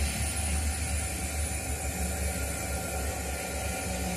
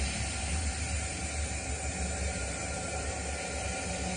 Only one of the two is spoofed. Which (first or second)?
second